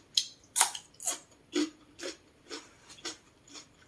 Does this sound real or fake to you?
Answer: real